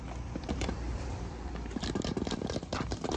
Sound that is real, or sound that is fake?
fake